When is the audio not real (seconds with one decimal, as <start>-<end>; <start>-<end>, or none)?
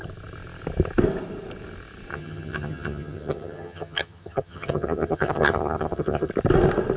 2.1-6.3